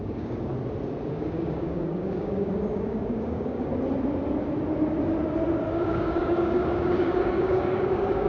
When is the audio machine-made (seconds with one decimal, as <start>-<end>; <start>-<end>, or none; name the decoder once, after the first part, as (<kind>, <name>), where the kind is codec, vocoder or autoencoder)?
0.0-0.5 (codec, DAC); 1.1-3.7; 5.6-8.3